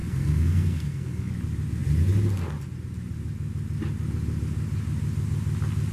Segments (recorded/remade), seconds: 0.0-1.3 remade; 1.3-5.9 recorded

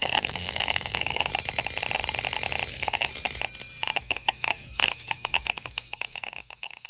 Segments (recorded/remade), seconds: 0.0-1.3 remade; 1.3-2.7 recorded; 2.7-3.1 remade; 3.1-4.0 recorded; 4.0-6.9 remade

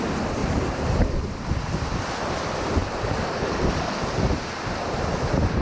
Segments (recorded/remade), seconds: 0.0-0.4 recorded; 0.4-1.6 remade; 1.6-5.6 recorded

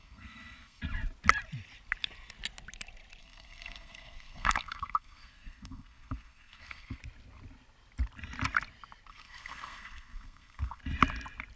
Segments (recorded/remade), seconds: 0.0-0.8 remade; 0.8-3.2 recorded; 3.2-7.0 remade; 7.0-9.1 recorded; 9.1-10.8 remade; 10.8-11.6 recorded